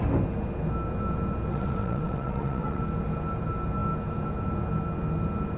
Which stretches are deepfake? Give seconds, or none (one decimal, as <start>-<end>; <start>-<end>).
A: 1.5-2.8